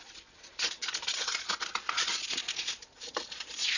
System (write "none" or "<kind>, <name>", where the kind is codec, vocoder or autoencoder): vocoder, Vocos